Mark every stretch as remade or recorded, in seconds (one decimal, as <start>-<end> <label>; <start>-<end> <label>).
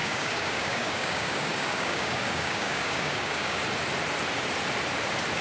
0.0-3.6 remade; 3.6-5.4 recorded